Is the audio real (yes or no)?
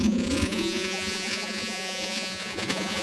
no